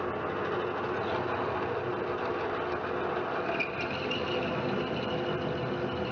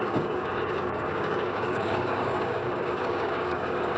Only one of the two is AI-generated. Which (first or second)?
second